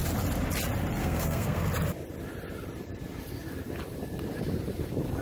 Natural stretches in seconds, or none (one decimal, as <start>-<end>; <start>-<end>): 0.0-1.0; 1.7-5.2